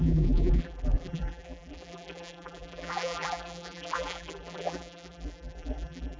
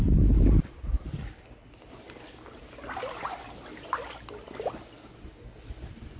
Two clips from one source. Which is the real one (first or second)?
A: second